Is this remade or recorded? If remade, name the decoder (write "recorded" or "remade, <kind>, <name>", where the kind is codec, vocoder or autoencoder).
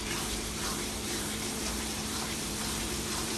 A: remade, vocoder, BigVGAN v2